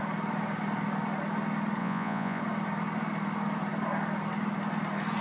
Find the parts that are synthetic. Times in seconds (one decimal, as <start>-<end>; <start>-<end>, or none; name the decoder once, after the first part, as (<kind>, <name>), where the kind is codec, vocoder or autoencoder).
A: 1.8-2.4 (vocoder, Vocos)